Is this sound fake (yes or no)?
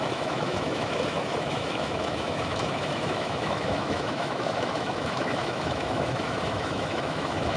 yes